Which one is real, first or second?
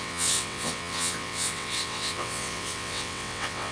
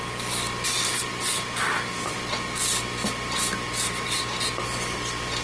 second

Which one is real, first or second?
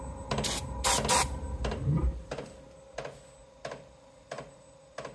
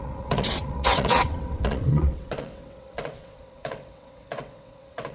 first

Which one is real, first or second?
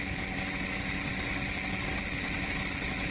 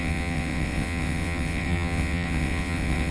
first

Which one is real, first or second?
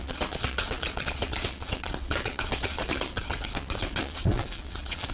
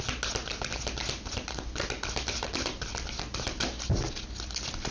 second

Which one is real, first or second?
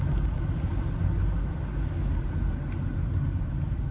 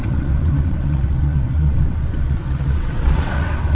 first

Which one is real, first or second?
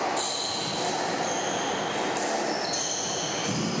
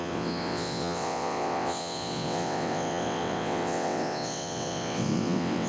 first